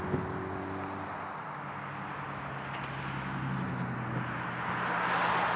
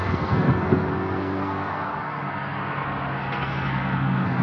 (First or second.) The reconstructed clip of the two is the second